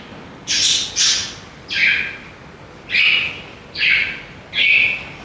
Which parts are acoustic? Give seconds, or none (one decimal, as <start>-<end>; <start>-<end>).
0.0-5.2